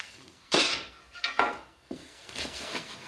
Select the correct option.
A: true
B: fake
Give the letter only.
B